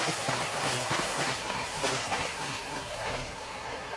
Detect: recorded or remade remade